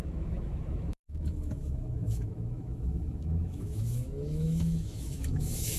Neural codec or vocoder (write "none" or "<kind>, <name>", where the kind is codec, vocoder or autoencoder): autoencoder, DAC-VAE